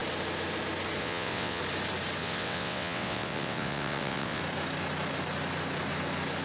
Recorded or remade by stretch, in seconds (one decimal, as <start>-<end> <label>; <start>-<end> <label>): 0.0-1.0 recorded; 1.0-1.6 remade; 1.6-2.2 recorded; 2.2-4.4 remade; 4.4-6.4 recorded